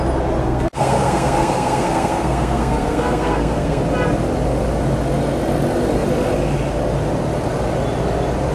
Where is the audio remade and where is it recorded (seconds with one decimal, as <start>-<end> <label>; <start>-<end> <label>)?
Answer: 0.0-0.4 recorded; 0.4-3.8 remade; 3.8-8.5 recorded